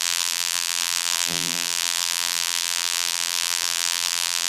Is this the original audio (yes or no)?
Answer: no